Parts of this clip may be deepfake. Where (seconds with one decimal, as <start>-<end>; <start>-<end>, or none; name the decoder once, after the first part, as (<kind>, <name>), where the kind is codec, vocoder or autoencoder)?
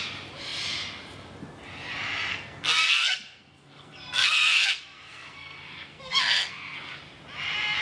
2.3-7.0 (codec, SNAC)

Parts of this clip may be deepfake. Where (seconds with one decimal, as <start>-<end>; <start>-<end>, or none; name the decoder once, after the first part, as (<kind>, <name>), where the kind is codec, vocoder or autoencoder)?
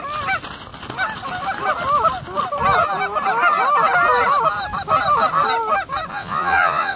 6.1-7.0 (vocoder, Vocos)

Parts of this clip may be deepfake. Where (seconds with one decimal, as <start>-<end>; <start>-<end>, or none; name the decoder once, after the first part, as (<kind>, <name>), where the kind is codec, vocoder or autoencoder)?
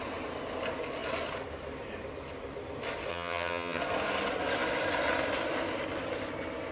3.1-3.8 (vocoder, HiFi-GAN)